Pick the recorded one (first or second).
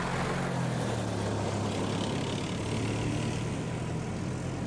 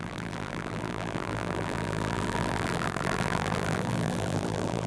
first